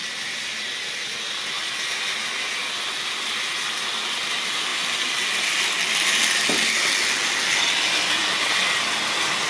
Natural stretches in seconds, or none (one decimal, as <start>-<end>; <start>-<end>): 1.4-4.7; 6.7-8.2; 9.0-9.5